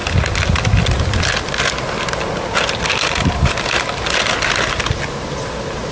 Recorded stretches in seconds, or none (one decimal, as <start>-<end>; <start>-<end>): 0.0-5.9